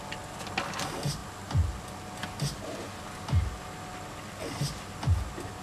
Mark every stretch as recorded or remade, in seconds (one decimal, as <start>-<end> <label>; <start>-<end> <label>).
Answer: 0.0-5.6 recorded